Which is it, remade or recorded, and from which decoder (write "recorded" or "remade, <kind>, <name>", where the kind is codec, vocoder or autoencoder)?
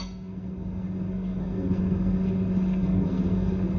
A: remade, codec, SNAC